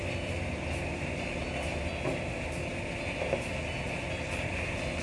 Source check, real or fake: real